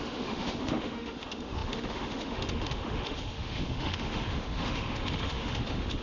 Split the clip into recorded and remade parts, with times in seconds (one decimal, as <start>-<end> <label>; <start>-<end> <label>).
0.0-6.0 remade